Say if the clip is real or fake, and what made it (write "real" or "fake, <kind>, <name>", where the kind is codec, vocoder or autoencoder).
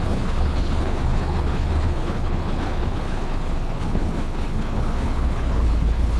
fake, codec, HILCodec